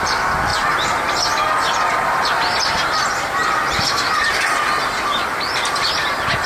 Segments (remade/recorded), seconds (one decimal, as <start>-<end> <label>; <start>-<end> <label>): 0.0-6.5 recorded